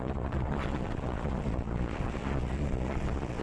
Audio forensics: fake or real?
fake